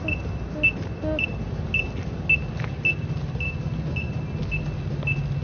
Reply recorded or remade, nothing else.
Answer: recorded